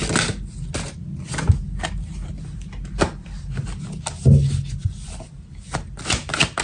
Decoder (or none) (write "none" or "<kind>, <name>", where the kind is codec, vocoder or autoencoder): none